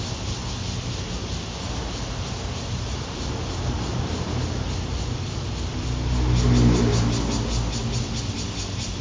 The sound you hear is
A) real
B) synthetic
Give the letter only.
A